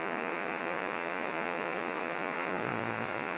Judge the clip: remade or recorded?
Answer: remade